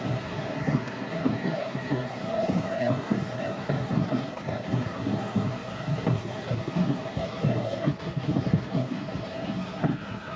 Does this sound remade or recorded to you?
remade